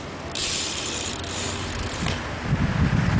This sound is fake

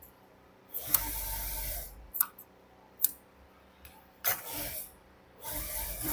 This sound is fake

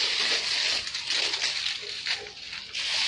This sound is real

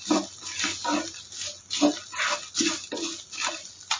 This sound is real